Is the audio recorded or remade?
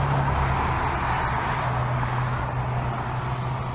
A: recorded